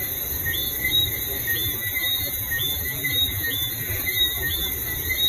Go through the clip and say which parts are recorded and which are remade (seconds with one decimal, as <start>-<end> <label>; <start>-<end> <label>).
0.0-1.5 recorded; 1.5-4.7 remade; 4.7-5.3 recorded